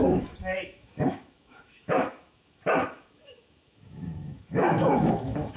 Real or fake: fake